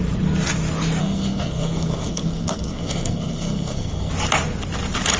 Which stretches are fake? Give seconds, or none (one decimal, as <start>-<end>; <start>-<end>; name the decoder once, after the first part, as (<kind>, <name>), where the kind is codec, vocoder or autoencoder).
1.0-4.1 (codec, SNAC)